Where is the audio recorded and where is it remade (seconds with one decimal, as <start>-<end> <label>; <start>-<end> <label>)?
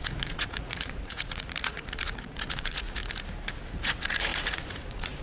0.0-3.0 remade; 3.0-3.7 recorded; 3.7-5.2 remade